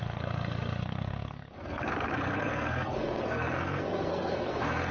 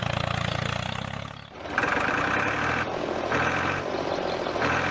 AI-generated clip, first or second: first